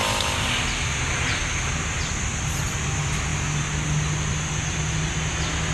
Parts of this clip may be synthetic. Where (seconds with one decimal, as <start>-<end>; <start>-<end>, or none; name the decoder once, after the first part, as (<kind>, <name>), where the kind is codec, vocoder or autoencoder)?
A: none